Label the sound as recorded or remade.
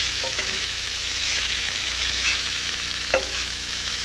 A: remade